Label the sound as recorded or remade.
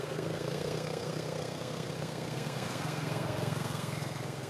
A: remade